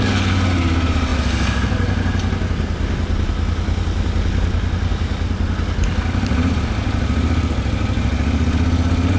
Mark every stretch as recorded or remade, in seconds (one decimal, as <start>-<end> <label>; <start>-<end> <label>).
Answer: 0.0-9.2 recorded